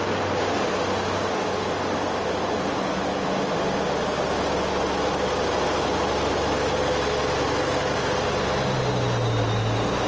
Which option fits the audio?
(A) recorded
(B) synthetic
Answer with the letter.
A